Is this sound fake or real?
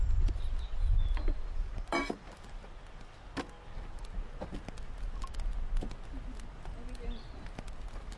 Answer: real